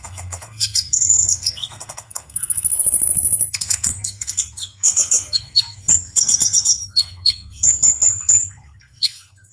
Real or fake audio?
fake